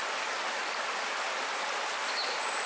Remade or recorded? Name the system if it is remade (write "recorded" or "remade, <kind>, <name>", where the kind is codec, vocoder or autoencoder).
recorded